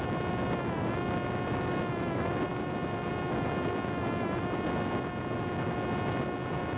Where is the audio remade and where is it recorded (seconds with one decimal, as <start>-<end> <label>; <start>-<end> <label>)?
0.0-6.8 recorded